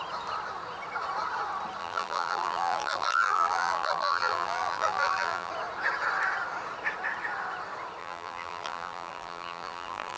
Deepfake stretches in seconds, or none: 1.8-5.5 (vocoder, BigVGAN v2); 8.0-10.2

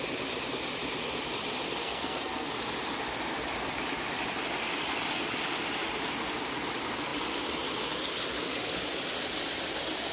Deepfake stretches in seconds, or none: 1.8-2.5 (codec, SNAC)

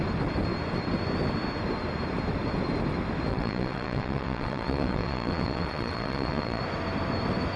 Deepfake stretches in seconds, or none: 3.3-6.6 (vocoder, WaveNeXt)